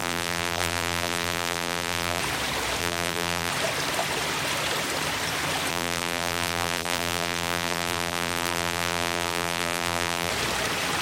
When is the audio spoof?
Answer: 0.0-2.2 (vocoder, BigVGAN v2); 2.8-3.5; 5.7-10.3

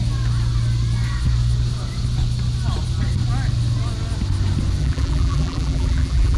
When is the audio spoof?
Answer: 4.8-6.4 (vocoder, BigVGAN v2)

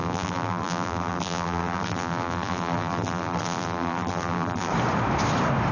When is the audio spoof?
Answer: 0.0-4.7 (vocoder, BigVGAN v2)

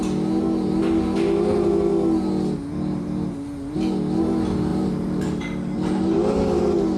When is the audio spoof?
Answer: 4.7-6.2 (vocoder, BigVGAN v2)

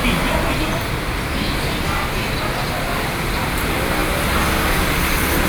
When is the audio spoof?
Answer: 3.3-4.0 (vocoder, BigVGAN v2)

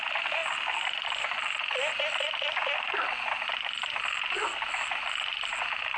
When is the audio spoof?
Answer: none

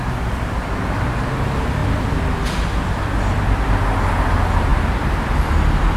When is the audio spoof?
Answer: 1.8-3.8 (vocoder, BigVGAN v2); 4.7-6.0

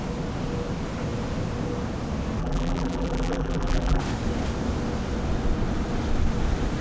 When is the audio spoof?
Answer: 2.4-4.0 (vocoder, BigVGAN v2)